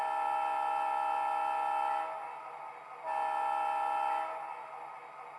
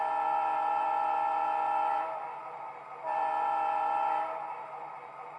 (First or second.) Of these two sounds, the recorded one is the first